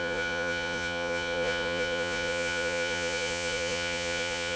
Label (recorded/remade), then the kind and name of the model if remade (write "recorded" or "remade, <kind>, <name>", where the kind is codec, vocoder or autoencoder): remade, vocoder, Vocos